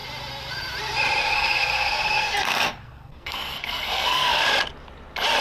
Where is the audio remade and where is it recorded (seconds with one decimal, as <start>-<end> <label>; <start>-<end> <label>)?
0.0-1.2 recorded; 1.2-4.4 remade; 4.4-5.4 recorded